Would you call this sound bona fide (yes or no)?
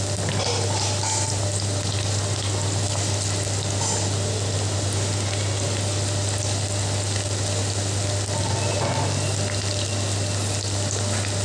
yes